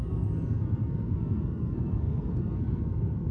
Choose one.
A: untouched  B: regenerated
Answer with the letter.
B